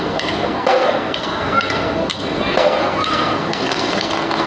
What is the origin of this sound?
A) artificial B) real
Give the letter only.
A